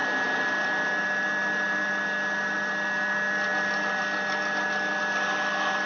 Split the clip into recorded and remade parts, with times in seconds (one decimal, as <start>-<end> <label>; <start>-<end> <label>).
0.0-5.9 recorded

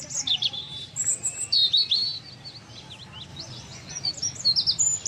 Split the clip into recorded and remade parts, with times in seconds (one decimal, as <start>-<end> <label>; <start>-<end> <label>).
0.0-3.3 recorded; 3.3-4.1 remade; 4.1-5.1 recorded